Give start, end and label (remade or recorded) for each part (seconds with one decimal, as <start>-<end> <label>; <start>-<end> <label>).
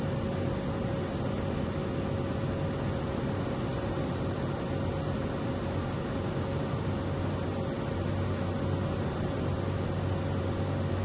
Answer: 0.0-11.0 recorded